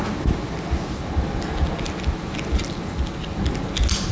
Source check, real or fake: real